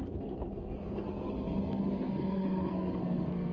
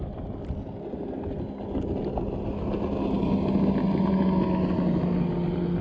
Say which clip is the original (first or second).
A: second